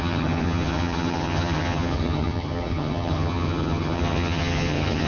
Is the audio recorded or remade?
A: remade